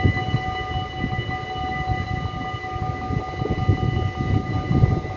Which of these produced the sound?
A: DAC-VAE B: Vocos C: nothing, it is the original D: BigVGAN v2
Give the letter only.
C